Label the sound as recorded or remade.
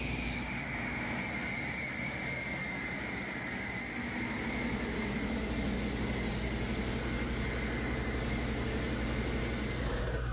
recorded